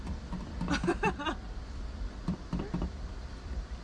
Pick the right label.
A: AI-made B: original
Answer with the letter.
A